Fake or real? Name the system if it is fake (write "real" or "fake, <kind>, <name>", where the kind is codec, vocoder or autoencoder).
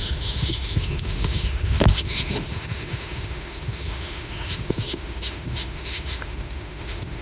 fake, autoencoder, DAC-VAE